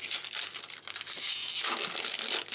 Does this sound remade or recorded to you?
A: recorded